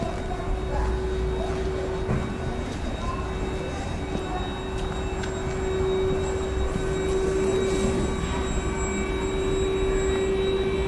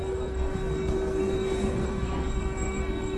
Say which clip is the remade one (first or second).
second